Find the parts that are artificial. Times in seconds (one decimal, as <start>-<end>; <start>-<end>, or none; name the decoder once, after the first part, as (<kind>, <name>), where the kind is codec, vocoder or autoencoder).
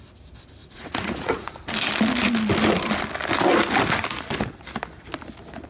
0.6-1.5 (vocoder, Vocos)